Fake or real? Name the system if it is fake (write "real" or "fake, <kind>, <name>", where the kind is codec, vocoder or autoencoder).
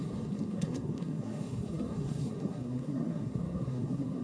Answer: fake, codec, SNAC